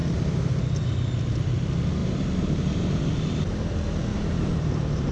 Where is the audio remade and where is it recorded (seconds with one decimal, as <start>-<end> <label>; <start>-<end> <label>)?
0.0-0.6 remade; 0.6-2.0 recorded; 2.0-3.6 remade; 3.6-4.1 recorded; 4.1-5.1 remade